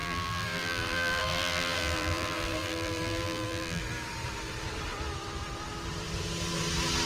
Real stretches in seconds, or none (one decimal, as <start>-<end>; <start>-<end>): 3.8-7.1